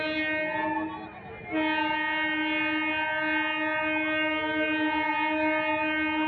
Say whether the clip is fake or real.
real